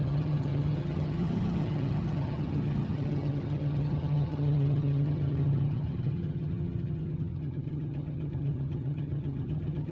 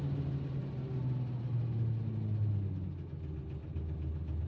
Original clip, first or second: second